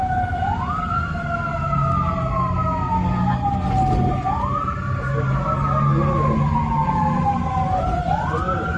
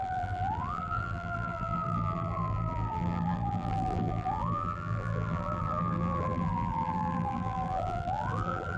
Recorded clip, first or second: first